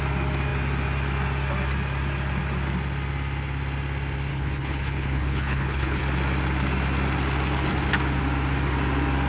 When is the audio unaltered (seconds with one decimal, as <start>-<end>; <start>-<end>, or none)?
0.0-4.3; 6.0-9.3